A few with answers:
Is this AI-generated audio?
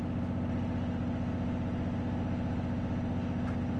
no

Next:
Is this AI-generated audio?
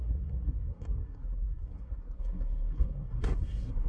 yes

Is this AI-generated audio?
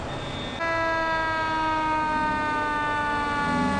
no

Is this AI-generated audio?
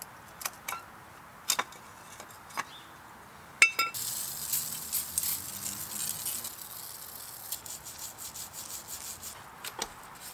no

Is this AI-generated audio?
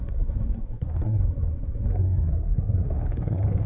yes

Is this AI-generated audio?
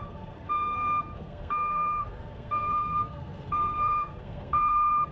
yes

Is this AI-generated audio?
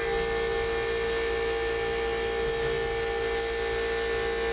no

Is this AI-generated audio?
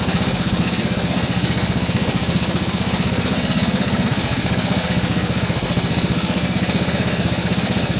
yes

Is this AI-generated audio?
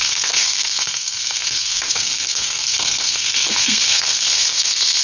yes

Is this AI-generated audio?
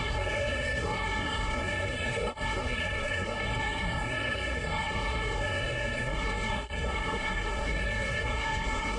yes